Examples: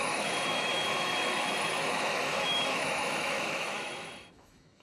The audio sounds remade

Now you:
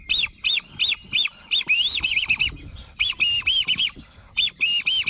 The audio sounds recorded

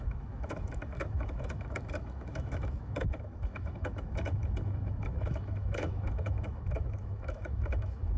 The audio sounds remade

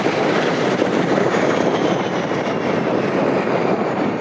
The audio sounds remade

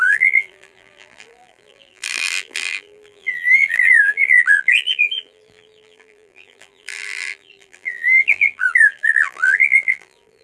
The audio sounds remade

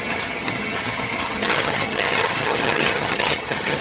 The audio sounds remade